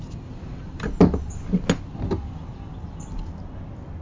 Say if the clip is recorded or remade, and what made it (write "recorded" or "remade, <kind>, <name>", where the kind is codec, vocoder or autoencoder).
recorded